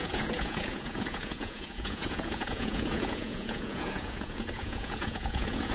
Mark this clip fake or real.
fake